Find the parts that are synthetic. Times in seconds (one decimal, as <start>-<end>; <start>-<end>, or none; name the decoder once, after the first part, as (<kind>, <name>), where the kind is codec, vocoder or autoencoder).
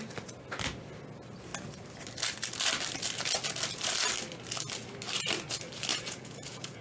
5.9-6.8 (vocoder, Vocos)